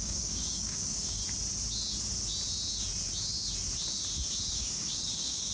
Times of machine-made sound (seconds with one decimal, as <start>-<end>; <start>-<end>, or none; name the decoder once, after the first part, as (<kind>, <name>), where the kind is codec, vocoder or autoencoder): 0.0-1.2 (codec, DAC); 4.5-5.5